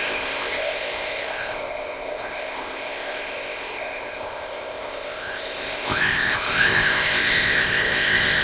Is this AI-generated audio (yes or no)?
yes